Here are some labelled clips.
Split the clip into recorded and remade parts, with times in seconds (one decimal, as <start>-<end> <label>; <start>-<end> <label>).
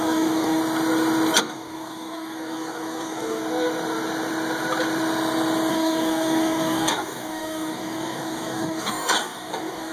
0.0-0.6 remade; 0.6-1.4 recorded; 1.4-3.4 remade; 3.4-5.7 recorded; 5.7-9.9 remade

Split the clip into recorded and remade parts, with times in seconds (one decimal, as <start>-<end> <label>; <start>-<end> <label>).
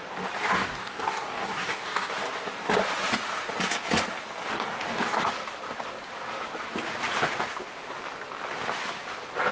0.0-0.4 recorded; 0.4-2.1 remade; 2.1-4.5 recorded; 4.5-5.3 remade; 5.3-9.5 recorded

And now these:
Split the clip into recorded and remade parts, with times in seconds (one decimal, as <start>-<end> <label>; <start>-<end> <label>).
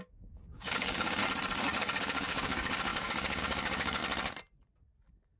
0.0-1.2 remade; 1.2-1.8 recorded; 1.8-4.0 remade; 4.0-5.4 recorded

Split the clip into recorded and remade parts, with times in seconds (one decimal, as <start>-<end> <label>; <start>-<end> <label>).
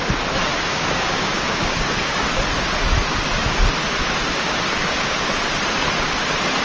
0.0-0.7 recorded; 0.7-2.2 remade; 2.2-4.8 recorded; 4.8-5.3 remade; 5.3-6.6 recorded